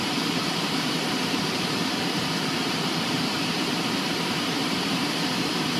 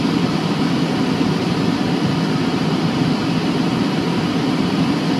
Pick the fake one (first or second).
first